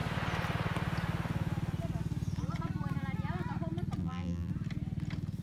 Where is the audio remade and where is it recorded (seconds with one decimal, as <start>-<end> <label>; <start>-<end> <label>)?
0.0-4.0 recorded; 4.0-4.5 remade; 4.5-5.4 recorded